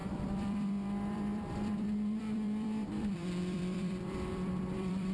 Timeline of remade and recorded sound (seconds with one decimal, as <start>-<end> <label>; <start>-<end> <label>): 0.0-5.1 remade